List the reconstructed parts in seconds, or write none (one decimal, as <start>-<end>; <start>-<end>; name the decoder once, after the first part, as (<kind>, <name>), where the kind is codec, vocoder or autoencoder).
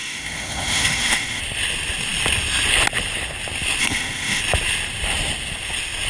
0.0-1.4 (autoencoder, DAC-VAE); 3.8-4.4